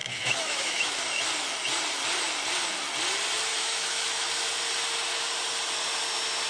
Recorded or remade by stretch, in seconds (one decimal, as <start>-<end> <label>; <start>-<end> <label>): 0.0-1.0 remade; 1.0-3.5 recorded; 3.5-4.3 remade; 4.3-6.5 recorded